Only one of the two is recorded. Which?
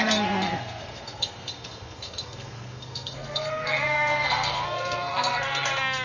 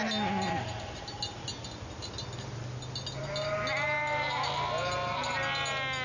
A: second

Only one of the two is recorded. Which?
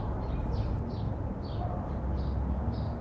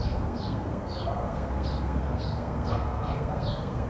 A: first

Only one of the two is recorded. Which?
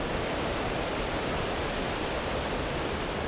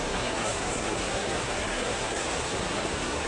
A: first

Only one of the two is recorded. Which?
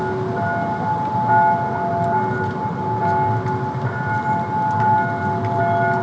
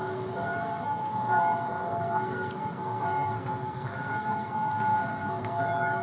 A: first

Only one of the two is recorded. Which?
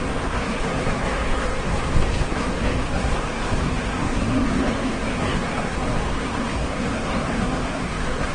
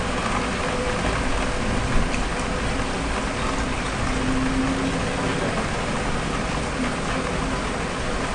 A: second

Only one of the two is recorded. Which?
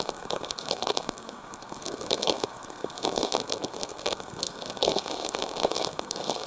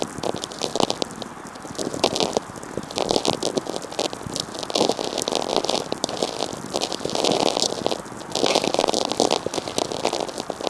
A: second